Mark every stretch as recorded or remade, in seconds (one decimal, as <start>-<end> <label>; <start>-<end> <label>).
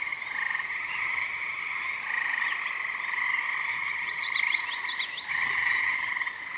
0.0-0.7 recorded; 0.7-2.0 remade; 2.0-3.7 recorded; 3.7-4.2 remade; 4.2-5.3 recorded; 5.3-6.1 remade; 6.1-6.6 recorded